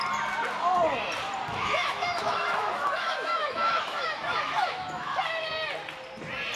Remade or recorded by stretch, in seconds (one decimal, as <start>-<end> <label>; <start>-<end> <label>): 0.0-1.5 recorded; 1.5-5.5 remade; 5.5-6.6 recorded